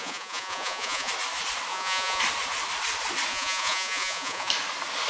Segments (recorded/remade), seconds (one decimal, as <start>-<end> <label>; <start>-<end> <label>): 0.0-1.1 remade; 1.1-1.7 recorded; 1.7-2.2 remade; 2.2-3.3 recorded; 3.3-4.5 remade; 4.5-5.1 recorded